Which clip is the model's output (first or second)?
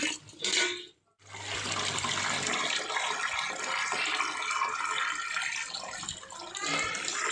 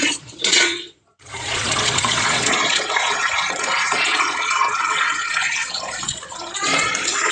second